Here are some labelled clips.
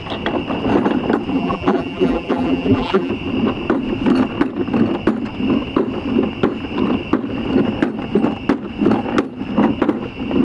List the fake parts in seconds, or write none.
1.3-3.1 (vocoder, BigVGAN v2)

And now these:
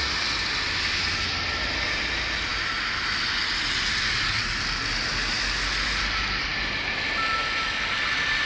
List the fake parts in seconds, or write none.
none

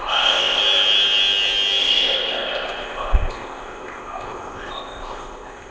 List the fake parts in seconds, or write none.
0.0-0.6 (codec, ZipCodec); 1.8-5.7

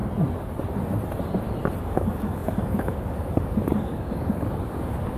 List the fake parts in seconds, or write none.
1.8-5.2 (codec, DAC)

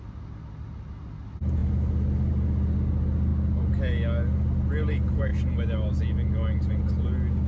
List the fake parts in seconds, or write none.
none

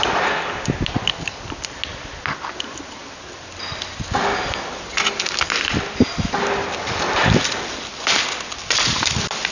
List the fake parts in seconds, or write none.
none

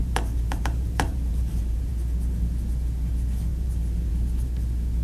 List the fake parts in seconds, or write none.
0.0-1.9 (vocoder, BigVGAN v2); 3.5-4.1

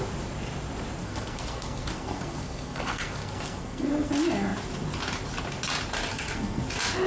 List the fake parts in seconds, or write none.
1.0-4.1 (codec, SNAC); 6.1-6.6